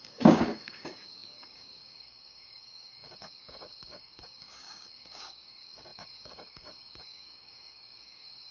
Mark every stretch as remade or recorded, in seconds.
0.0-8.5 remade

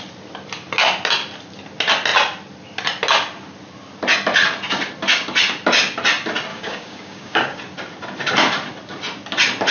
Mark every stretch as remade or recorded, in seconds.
0.0-6.5 recorded; 6.5-7.6 remade; 7.6-9.7 recorded

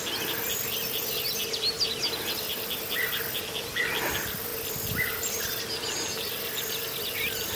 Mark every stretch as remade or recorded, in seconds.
0.0-7.6 recorded

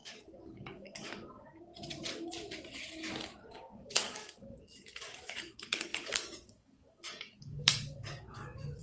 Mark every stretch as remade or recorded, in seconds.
0.0-1.7 remade; 1.7-3.5 recorded; 3.5-8.8 remade

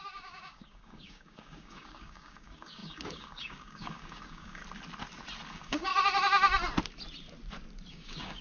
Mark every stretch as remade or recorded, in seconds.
0.0-4.6 remade; 4.6-5.5 recorded; 5.5-5.9 remade; 5.9-7.9 recorded; 7.9-8.4 remade

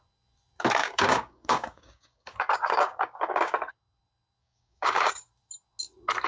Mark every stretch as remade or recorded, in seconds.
0.0-0.8 recorded; 0.8-3.7 remade; 3.7-4.4 recorded; 4.4-5.3 remade; 5.3-6.3 recorded

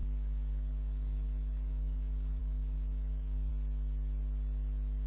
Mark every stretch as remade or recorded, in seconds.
0.0-3.5 remade; 3.5-5.1 recorded

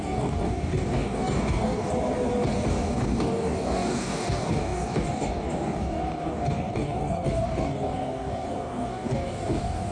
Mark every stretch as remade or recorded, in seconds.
0.0-1.9 remade; 1.9-2.7 recorded; 2.7-9.9 remade